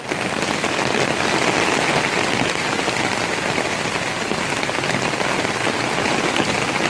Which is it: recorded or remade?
recorded